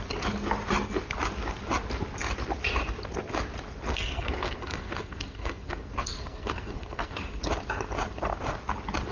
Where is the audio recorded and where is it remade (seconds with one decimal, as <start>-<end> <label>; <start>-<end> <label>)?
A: 0.0-3.9 recorded; 3.9-7.4 remade; 7.4-9.1 recorded